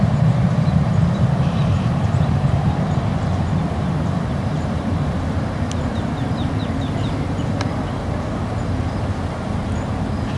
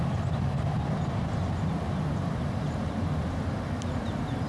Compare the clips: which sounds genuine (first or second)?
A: second